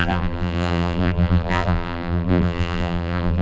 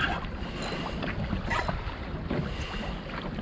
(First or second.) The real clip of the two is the second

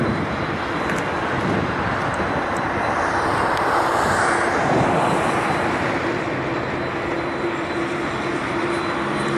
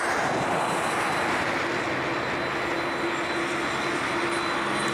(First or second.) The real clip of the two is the second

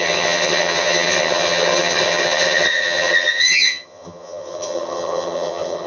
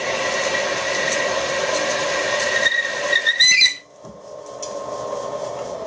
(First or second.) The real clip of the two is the second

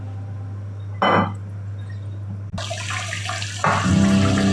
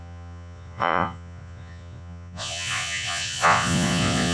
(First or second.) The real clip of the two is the first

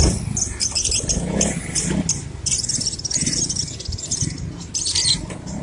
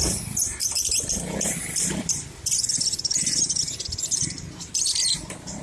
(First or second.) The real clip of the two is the first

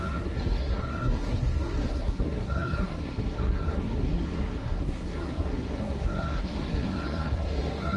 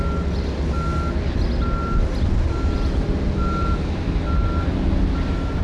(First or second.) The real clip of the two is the second